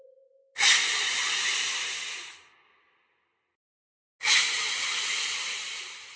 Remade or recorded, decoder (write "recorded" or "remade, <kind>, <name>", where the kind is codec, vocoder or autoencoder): recorded